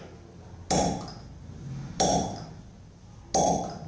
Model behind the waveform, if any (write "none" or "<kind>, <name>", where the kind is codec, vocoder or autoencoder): none